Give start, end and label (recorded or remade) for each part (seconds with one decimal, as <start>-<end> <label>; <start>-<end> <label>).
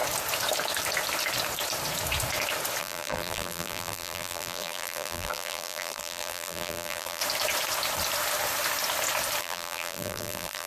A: 0.0-2.8 recorded; 2.8-7.2 remade; 7.2-9.4 recorded; 9.4-10.7 remade